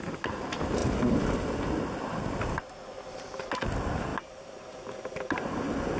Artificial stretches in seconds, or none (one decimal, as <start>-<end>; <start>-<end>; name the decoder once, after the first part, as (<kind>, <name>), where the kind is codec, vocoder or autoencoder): 4.1-5.5 (vocoder, BigVGAN v2)